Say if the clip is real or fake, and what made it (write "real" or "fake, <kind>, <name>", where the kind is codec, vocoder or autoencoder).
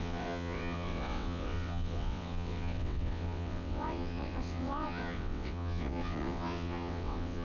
fake, vocoder, WaveNeXt